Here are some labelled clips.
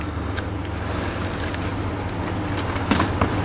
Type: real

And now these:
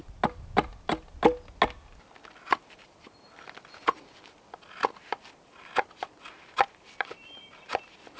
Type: real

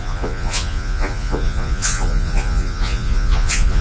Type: fake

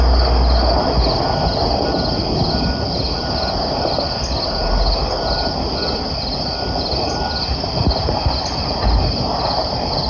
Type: real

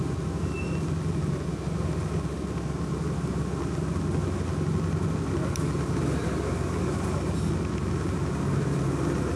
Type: real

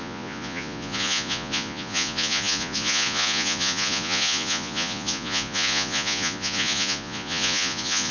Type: fake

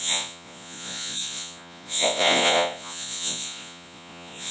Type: fake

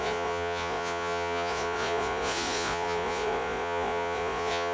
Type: fake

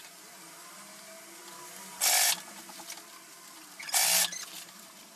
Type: real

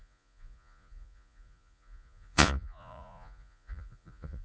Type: fake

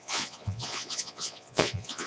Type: fake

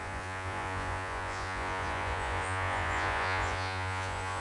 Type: fake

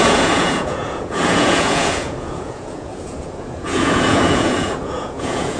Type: fake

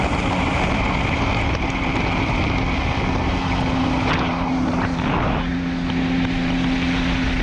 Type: real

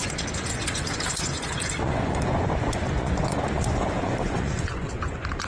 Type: fake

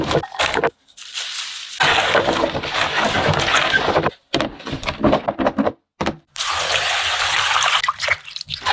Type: real